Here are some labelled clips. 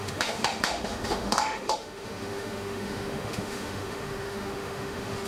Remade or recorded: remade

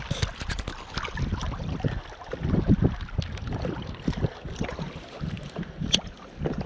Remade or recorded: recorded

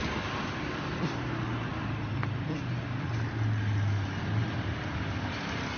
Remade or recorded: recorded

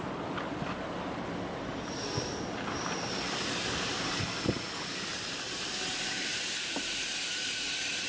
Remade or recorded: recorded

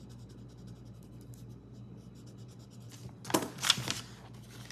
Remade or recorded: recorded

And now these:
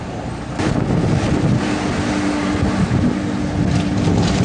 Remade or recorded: recorded